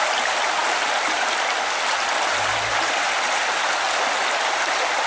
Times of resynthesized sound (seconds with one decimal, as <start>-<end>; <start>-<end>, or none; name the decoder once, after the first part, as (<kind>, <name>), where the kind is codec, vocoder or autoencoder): none